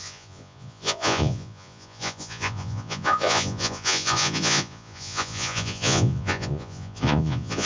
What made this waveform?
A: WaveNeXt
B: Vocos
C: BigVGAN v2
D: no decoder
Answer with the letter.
B